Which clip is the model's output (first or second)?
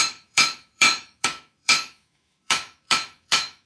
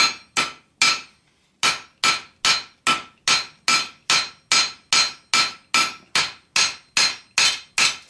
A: first